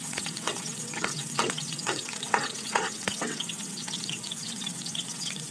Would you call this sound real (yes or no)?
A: no